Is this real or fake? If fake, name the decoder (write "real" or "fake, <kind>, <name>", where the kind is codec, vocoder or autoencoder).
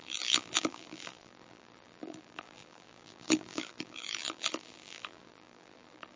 fake, vocoder, BigVGAN v2